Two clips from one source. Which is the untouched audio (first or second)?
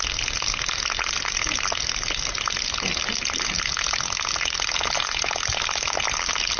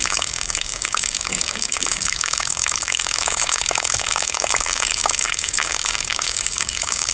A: first